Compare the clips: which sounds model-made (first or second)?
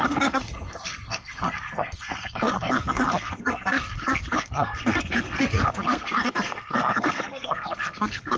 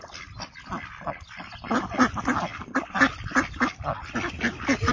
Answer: first